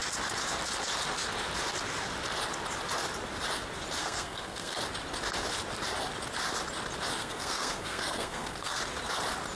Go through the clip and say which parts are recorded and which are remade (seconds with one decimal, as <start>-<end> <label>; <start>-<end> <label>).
0.0-4.0 recorded; 4.0-4.8 remade; 4.8-7.2 recorded; 7.2-8.8 remade; 8.8-9.6 recorded